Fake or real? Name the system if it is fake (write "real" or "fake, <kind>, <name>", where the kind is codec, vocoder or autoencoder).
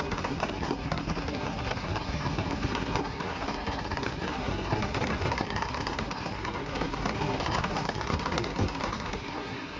fake, codec, SNAC